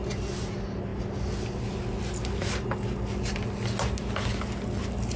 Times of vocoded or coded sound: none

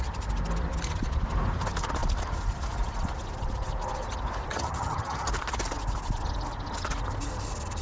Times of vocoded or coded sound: 4.5-5.3 (vocoder, HiFi-GAN)